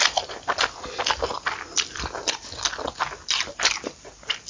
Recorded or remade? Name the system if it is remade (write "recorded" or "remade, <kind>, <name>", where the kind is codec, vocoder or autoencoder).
recorded